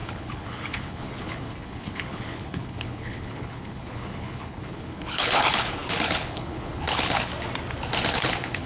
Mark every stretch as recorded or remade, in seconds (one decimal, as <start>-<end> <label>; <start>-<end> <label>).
0.0-7.3 remade; 7.3-8.1 recorded; 8.1-8.7 remade

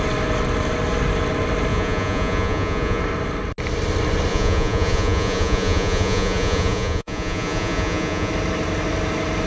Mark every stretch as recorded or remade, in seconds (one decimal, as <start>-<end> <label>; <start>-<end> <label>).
0.0-1.7 recorded; 1.7-3.0 remade; 3.0-4.3 recorded; 4.3-8.3 remade; 8.3-9.5 recorded

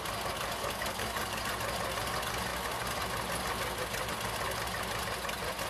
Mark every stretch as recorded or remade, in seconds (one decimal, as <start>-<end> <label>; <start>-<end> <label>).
0.0-0.6 recorded; 0.6-1.4 remade; 1.4-5.7 recorded

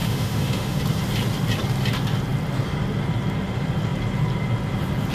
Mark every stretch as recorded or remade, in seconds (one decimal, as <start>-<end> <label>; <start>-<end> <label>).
0.0-0.8 remade; 0.8-5.1 recorded

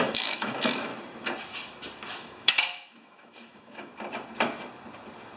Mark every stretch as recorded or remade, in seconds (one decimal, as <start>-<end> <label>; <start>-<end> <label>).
0.0-0.9 remade; 0.9-2.1 recorded; 2.1-3.9 remade; 3.9-5.4 recorded

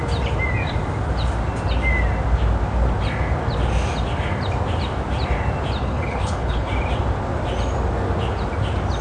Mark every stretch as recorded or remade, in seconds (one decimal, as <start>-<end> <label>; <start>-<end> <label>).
0.0-5.8 recorded; 5.8-6.7 remade; 6.7-9.0 recorded

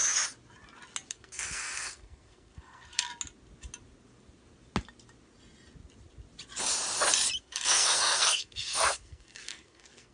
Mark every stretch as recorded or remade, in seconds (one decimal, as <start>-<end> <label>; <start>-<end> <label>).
0.0-1.1 recorded; 1.1-3.1 remade; 3.1-7.4 recorded; 7.4-10.1 remade